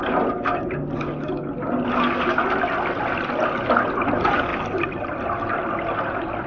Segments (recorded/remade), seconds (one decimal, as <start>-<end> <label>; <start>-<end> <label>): 0.0-4.5 recorded; 4.5-6.5 remade